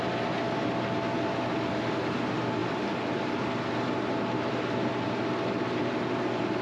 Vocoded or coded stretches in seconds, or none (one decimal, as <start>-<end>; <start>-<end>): none